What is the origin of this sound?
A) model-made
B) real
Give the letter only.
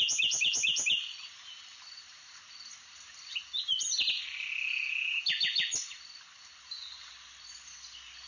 B